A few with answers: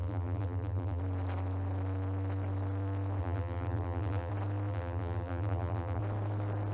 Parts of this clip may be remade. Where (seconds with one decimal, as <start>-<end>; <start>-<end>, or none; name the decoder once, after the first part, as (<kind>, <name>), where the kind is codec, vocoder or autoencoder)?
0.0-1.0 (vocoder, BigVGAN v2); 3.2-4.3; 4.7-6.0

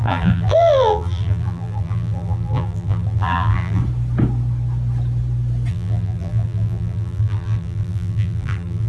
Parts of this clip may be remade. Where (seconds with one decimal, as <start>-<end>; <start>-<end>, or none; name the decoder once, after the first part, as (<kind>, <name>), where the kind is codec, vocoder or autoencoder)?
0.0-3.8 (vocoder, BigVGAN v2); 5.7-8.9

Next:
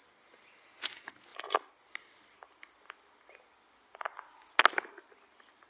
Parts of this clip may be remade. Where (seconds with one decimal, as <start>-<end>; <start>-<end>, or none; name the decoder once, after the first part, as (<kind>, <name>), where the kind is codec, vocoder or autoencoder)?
0.0-0.6 (vocoder, BigVGAN v2); 1.3-4.2

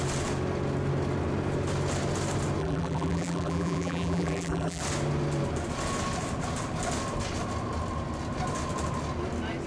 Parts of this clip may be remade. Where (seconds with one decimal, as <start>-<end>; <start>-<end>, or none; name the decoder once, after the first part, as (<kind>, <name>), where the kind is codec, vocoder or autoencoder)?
2.6-4.8 (vocoder, BigVGAN v2)

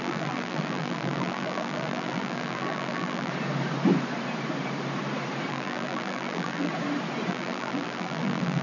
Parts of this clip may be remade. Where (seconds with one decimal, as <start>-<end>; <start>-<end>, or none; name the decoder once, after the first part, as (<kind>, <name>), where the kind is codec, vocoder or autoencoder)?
0.0-3.3 (vocoder, BigVGAN v2); 5.5-6.7; 7.3-8.6